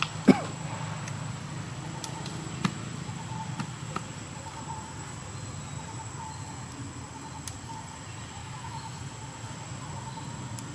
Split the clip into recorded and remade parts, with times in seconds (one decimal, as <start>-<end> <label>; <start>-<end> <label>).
0.0-8.4 recorded; 8.4-9.0 remade; 9.0-10.7 recorded